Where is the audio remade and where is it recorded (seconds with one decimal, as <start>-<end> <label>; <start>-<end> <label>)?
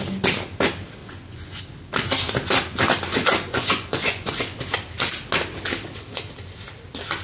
0.0-1.0 recorded; 1.0-1.6 remade; 1.6-3.1 recorded; 3.1-4.6 remade; 4.6-7.2 recorded